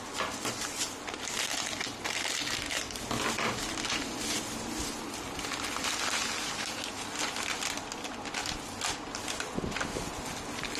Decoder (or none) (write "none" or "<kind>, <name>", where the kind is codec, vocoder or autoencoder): none